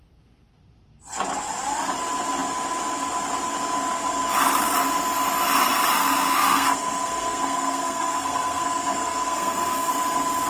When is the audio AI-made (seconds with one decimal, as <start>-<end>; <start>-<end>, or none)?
5.9-9.9